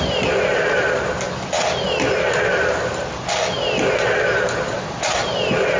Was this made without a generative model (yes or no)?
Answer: yes